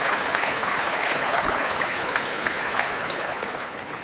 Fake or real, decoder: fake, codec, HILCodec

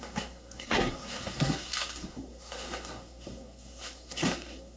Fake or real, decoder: fake, codec, SNAC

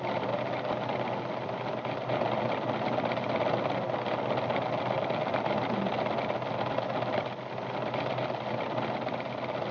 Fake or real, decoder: real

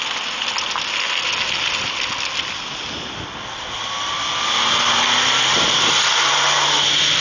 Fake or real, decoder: real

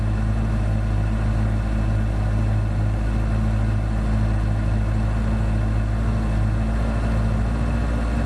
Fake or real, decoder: real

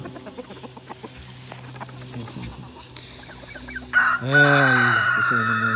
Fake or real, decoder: real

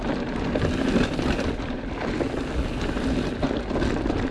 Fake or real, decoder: real